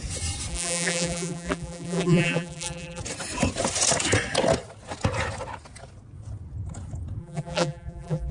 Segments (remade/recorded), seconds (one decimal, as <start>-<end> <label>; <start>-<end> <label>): 0.0-0.5 recorded; 0.5-3.0 remade; 3.0-7.2 recorded; 7.2-8.3 remade